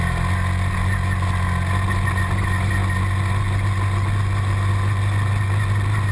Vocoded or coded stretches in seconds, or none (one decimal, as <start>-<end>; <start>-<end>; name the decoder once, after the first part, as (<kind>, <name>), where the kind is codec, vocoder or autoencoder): none

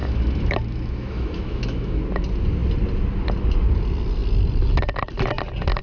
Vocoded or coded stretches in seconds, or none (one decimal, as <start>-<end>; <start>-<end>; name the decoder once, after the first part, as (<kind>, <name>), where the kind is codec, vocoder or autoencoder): 0.0-2.0 (autoencoder, DAC-VAE)

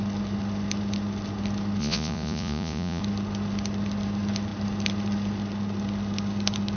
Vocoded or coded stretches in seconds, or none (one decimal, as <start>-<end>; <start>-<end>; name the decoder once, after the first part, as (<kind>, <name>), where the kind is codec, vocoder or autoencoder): 1.8-3.0 (vocoder, Vocos)

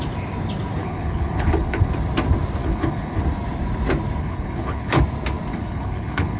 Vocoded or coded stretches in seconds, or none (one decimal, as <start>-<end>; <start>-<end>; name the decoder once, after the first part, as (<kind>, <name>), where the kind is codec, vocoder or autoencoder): 0.8-1.9 (codec, HILCodec); 2.6-3.2; 4.2-5.0; 5.5-6.4

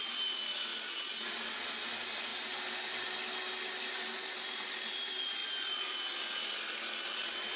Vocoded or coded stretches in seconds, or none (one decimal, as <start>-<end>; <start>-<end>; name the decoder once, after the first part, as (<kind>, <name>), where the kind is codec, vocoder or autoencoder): none

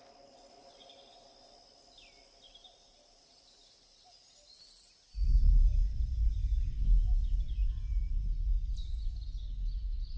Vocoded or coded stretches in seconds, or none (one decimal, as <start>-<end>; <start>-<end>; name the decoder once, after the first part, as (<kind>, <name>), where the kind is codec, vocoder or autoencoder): none

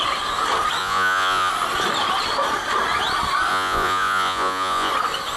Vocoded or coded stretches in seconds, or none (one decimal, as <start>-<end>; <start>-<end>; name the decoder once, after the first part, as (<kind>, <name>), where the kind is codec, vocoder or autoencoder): 0.8-1.5 (vocoder, Vocos); 3.5-4.9